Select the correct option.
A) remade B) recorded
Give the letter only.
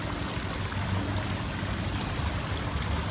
B